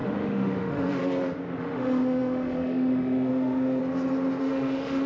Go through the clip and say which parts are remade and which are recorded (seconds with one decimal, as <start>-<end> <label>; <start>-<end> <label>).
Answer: 0.0-1.0 remade; 1.0-1.6 recorded; 1.6-3.8 remade; 3.8-4.4 recorded; 4.4-5.1 remade